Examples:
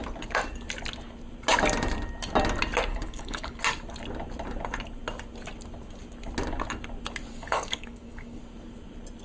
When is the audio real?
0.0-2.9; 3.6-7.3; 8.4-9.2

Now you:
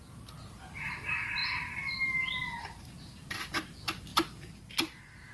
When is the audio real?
0.0-5.3

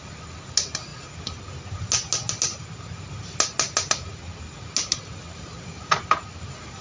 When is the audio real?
0.0-6.8

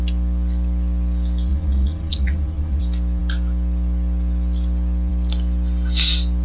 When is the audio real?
0.0-1.5; 2.8-6.4

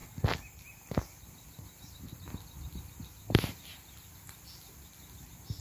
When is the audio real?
0.0-5.6

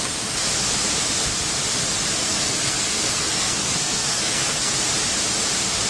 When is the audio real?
0.0-2.2; 4.7-5.9